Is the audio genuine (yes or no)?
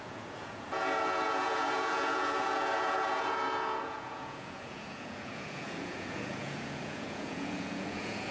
no